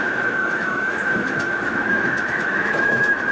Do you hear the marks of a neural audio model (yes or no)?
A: yes